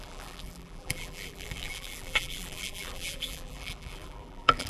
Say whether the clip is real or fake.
fake